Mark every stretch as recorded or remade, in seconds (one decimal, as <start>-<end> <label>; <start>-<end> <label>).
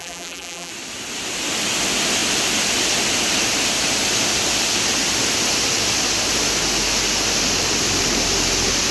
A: 0.0-0.7 remade; 0.7-8.9 recorded